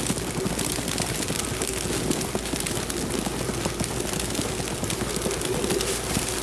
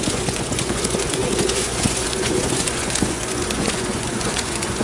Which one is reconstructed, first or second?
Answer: second